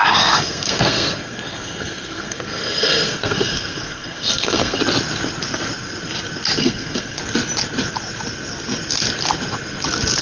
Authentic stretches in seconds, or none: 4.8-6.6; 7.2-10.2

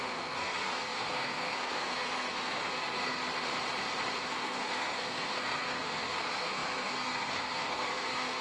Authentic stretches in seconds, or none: 3.2-4.3

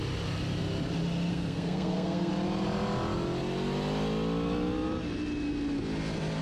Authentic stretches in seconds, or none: 0.0-1.3; 2.3-6.4

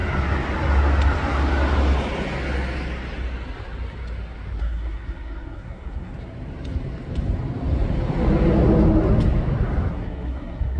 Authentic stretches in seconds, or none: 0.0-4.6; 6.1-9.9

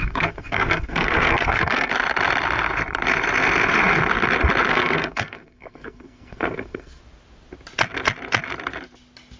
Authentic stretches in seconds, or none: 1.9-4.7; 7.0-9.4

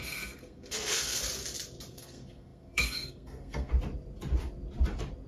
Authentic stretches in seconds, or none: 1.2-1.9; 3.7-5.3

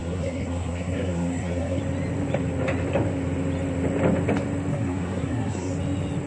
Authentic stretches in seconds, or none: 1.8-4.7; 5.7-6.3